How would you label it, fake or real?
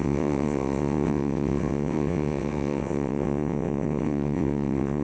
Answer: fake